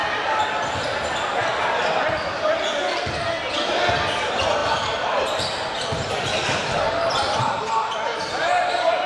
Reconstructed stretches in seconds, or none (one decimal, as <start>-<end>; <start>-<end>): none

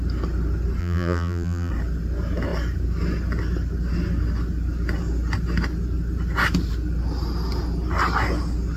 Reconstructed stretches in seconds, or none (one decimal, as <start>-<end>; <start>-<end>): 0.8-1.7

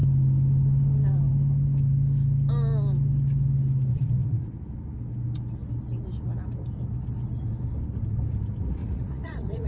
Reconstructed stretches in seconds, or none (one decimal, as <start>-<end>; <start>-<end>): 3.9-4.6; 8.8-9.7

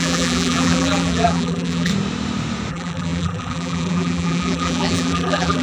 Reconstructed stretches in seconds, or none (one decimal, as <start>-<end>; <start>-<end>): 0.0-1.9; 2.7-5.6

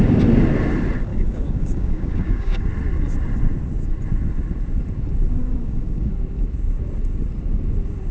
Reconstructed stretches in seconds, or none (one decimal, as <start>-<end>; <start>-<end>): 1.1-2.7; 5.4-6.1

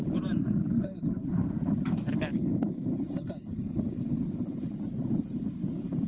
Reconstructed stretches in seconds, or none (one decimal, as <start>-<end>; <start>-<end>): 0.0-6.1

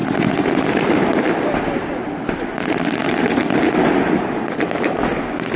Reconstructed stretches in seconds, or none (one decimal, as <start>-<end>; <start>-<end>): 0.0-2.6; 3.0-5.0